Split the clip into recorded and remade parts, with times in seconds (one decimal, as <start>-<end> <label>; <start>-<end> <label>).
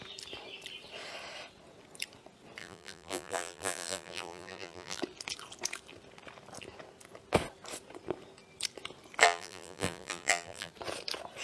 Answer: 0.0-2.6 recorded; 2.6-5.0 remade; 5.0-9.2 recorded; 9.2-10.7 remade; 10.7-11.4 recorded